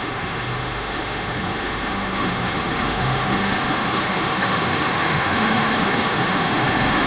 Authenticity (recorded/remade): remade